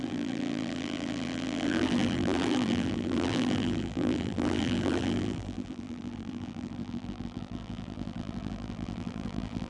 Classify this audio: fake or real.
fake